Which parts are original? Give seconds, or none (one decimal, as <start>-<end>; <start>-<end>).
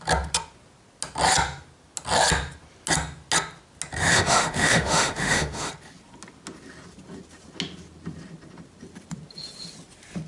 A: 0.0-4.0; 5.7-10.3